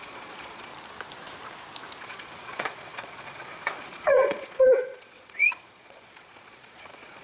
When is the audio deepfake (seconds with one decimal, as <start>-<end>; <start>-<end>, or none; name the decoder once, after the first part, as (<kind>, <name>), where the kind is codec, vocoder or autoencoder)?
0.0-0.7 (vocoder, Vocos); 2.0-7.2